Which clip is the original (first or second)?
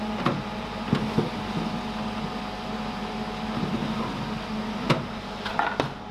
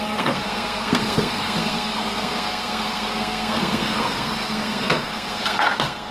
first